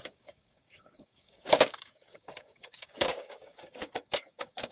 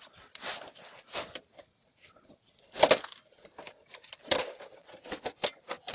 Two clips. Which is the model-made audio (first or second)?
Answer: first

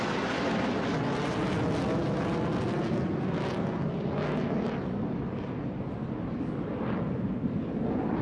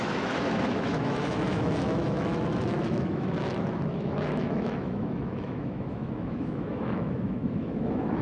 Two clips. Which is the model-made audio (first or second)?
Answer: second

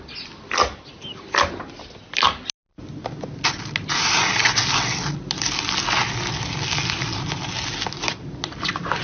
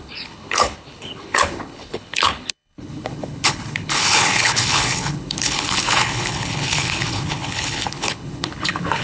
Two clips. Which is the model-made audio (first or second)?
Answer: second